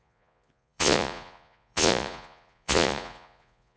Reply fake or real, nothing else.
fake